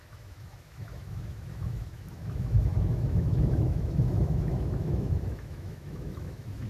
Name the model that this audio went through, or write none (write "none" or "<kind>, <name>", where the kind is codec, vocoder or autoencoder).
autoencoder, DAC-VAE